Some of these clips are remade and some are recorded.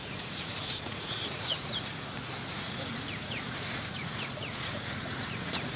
remade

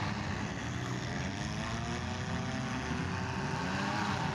recorded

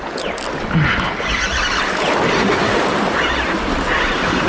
recorded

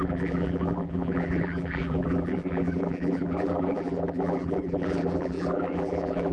remade